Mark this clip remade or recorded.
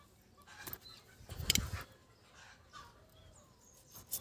recorded